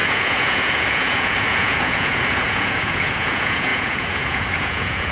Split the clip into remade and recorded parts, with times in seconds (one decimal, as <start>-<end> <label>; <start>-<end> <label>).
0.0-5.1 remade